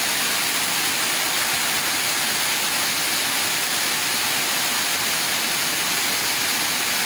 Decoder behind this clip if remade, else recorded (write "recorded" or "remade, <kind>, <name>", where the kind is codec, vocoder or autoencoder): recorded